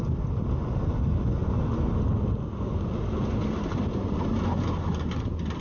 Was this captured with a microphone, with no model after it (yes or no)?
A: yes